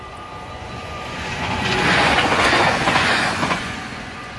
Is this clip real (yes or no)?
no